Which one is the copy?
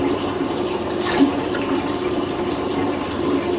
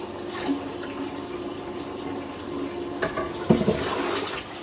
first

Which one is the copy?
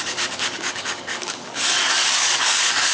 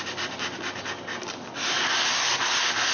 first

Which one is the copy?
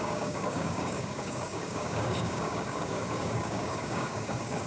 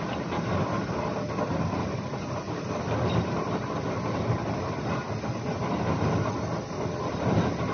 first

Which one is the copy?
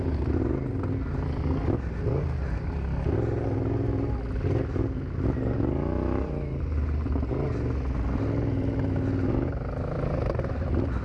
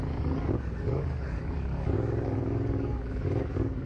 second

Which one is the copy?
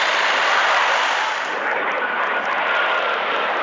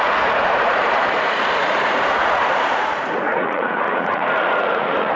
second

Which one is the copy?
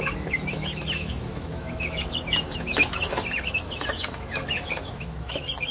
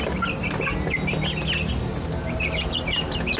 first